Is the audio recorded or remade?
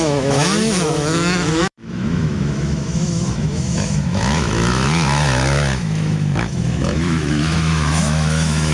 remade